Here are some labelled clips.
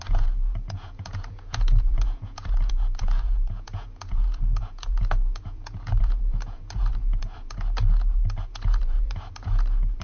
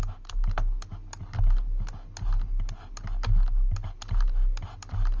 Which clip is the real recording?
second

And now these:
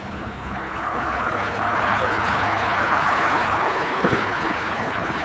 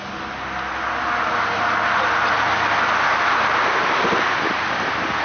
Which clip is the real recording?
second